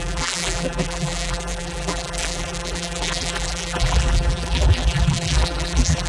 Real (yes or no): no